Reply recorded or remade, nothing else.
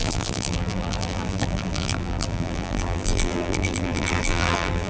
remade